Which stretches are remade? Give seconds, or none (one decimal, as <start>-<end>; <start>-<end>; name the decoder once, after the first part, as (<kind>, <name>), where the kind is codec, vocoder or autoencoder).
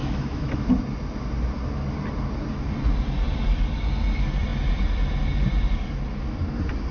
0.0-0.7 (autoencoder, DAC-VAE)